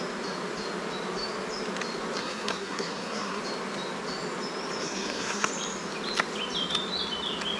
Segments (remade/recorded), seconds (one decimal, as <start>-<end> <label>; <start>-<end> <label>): 0.0-2.2 recorded; 2.2-3.4 remade; 3.4-4.8 recorded; 4.8-5.5 remade; 5.5-7.6 recorded